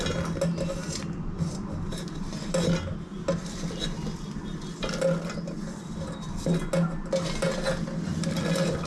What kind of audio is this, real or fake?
real